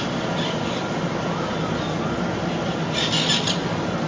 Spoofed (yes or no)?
no